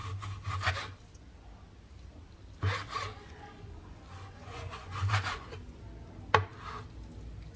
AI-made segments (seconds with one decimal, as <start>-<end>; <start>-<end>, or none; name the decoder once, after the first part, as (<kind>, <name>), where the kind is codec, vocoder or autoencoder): 3.1-5.8 (vocoder, Vocos)